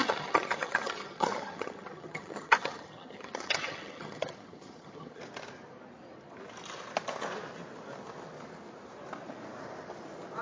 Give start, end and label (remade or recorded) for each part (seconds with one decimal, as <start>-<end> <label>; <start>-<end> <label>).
0.0-5.2 remade; 5.2-10.4 recorded